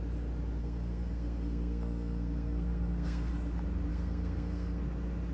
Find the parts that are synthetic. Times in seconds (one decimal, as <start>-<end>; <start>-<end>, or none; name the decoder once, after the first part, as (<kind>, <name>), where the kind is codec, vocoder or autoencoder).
0.6-3.3 (codec, SNAC); 3.9-4.8